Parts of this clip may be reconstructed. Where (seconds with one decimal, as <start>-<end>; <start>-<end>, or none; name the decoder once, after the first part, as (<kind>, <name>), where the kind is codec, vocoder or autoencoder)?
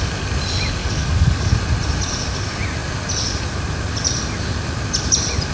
0.8-1.5 (codec, DAC)